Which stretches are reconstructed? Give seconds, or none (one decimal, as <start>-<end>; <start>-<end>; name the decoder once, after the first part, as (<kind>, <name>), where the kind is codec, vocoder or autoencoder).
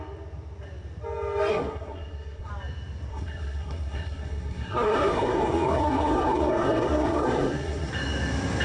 1.5-2.5 (codec, SNAC); 3.1-7.9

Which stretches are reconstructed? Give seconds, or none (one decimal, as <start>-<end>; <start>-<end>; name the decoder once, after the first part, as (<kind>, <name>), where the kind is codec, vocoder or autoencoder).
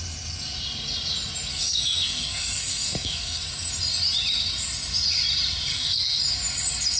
1.5-3.5 (codec, SNAC); 5.7-6.2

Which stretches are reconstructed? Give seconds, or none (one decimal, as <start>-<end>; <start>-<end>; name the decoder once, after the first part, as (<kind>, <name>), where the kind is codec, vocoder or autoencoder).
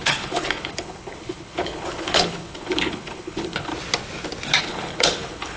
0.0-3.7 (codec, HILCodec); 4.6-5.6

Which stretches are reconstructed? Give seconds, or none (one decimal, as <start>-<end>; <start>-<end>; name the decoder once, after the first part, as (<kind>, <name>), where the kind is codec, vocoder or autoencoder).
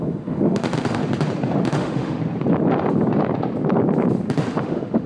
0.0-1.0 (autoencoder, DAC-VAE); 1.6-2.2; 4.5-5.1